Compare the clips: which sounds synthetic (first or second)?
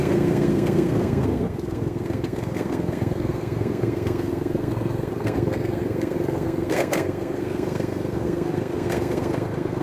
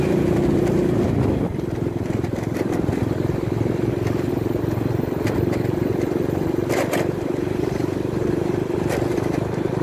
first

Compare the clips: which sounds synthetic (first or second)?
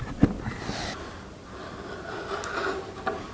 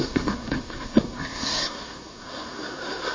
second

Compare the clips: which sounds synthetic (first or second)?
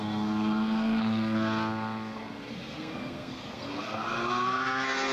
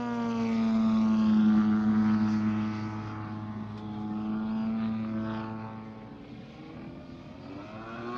first